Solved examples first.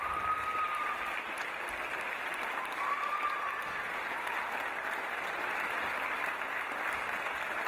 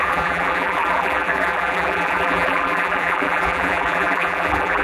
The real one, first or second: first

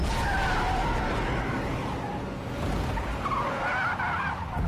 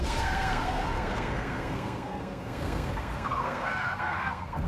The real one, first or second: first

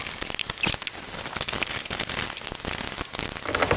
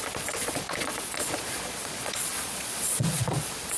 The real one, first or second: first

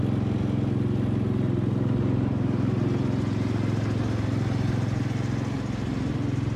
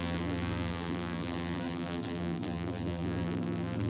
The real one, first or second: first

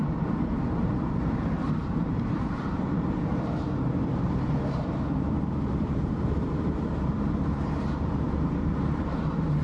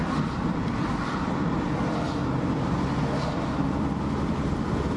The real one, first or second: second